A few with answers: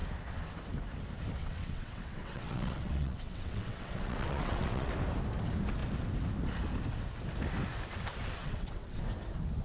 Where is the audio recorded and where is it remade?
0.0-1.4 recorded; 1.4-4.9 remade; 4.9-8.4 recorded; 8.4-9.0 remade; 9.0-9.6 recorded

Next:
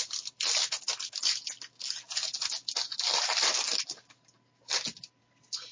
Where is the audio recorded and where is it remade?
0.0-5.7 recorded

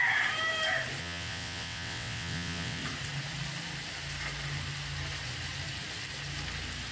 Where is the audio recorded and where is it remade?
0.0-1.0 recorded; 1.0-2.8 remade; 2.8-6.9 recorded

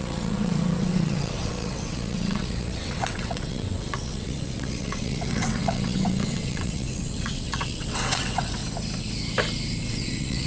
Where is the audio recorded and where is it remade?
0.0-8.6 remade; 8.6-9.9 recorded; 9.9-10.5 remade

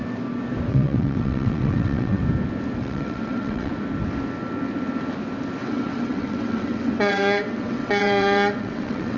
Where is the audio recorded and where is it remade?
0.0-0.7 recorded; 0.7-2.2 remade; 2.2-2.8 recorded; 2.8-3.7 remade; 3.7-5.6 recorded; 5.6-9.2 remade

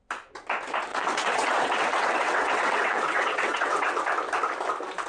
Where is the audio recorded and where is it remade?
0.0-0.9 recorded; 0.9-4.0 remade; 4.0-5.1 recorded